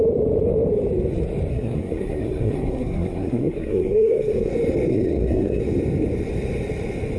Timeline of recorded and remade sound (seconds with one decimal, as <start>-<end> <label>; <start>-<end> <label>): 0.0-1.5 recorded; 1.5-4.5 remade; 4.5-4.9 recorded; 4.9-5.6 remade; 5.6-7.2 recorded